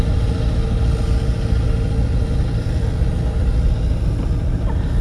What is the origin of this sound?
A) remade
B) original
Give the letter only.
B